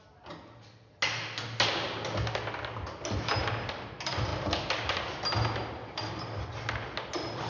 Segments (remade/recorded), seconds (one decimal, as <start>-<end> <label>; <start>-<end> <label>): 0.0-7.5 recorded